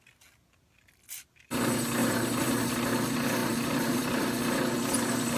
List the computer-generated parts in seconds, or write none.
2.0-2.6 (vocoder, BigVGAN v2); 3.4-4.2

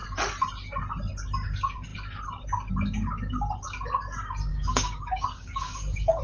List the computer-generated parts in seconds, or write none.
4.5-6.2 (codec, DAC)